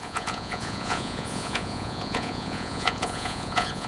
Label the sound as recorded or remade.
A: remade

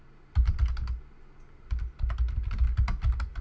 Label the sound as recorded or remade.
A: recorded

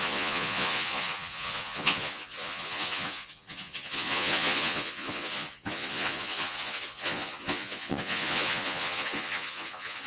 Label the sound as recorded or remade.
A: remade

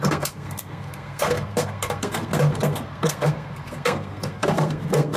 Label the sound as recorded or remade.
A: remade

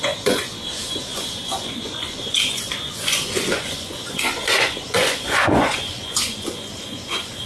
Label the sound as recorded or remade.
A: remade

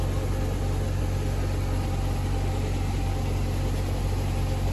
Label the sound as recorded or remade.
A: recorded